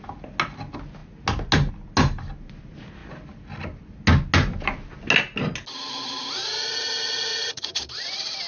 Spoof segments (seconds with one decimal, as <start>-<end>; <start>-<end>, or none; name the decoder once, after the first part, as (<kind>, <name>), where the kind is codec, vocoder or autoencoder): 7.3-7.8 (vocoder, Vocos)